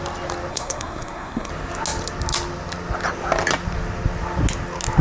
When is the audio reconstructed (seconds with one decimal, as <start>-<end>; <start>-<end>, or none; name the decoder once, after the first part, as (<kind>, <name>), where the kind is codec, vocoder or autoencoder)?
0.5-1.5 (codec, SNAC)